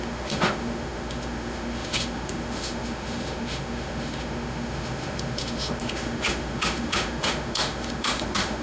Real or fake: fake